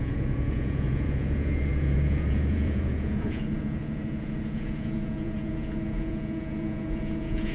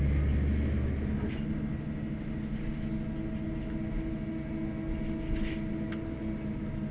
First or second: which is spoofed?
first